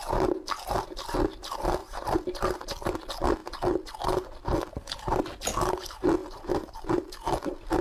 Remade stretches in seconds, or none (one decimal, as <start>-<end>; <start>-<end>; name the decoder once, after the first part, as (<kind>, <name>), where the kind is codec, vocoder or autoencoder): 1.8-2.4 (vocoder, BigVGAN v2)